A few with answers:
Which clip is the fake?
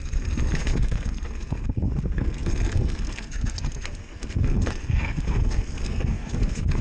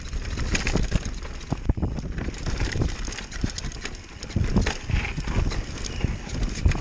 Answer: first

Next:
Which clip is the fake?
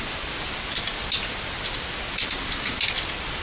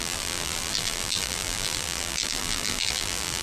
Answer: second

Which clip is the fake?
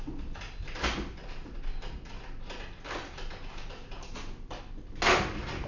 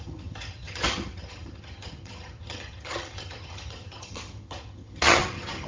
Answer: second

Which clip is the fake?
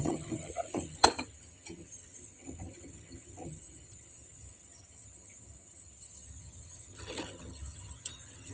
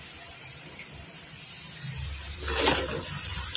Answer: first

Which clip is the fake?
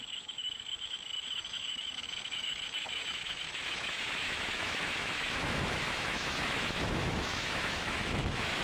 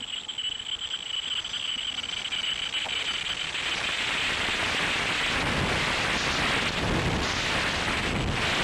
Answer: first